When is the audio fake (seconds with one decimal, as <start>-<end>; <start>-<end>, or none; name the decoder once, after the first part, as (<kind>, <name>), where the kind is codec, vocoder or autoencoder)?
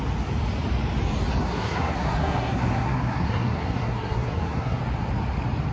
1.4-4.8 (codec, SNAC)